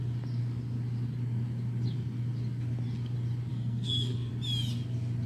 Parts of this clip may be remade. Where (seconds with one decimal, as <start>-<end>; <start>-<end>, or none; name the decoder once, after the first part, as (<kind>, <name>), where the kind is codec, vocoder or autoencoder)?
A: 3.5-4.3 (codec, SNAC)